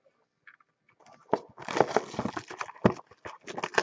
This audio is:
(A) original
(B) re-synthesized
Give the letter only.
A